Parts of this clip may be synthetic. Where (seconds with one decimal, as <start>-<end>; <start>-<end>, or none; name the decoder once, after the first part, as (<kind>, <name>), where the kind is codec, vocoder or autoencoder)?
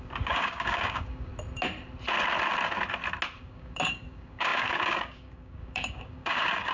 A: 0.0-1.3 (codec, DAC); 3.4-6.7